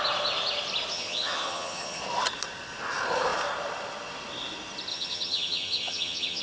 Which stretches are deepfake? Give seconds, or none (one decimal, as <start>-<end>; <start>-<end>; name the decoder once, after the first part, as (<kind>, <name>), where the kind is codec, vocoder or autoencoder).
0.9-2.0 (vocoder, HiFi-GAN); 4.9-6.4